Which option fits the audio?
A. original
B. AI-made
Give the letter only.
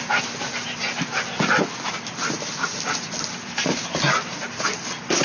A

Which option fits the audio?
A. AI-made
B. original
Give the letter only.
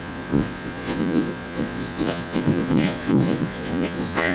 A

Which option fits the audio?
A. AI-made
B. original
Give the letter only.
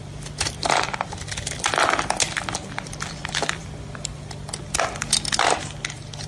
B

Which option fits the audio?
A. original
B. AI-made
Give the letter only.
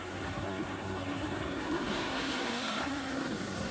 B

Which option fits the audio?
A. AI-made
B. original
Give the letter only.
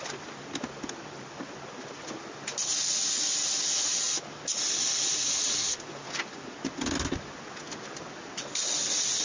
B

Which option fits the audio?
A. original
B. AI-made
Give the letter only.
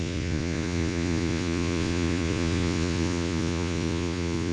B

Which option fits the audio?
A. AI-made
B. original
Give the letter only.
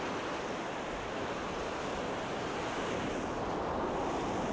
B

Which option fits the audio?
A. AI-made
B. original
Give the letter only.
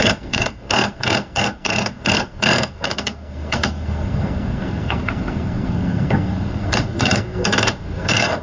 A